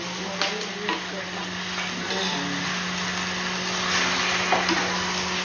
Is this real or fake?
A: real